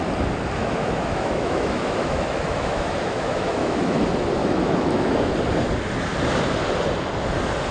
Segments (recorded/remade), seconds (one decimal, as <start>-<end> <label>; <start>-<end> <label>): 0.0-0.6 recorded; 0.6-4.0 remade; 4.0-4.4 recorded; 4.4-5.3 remade; 5.3-7.7 recorded